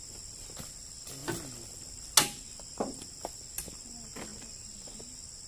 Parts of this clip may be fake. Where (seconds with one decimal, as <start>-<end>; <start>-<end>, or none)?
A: none